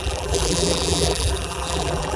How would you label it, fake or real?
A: fake